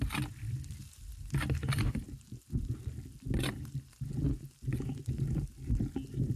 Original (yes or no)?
yes